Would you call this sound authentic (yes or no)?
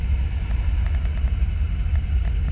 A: yes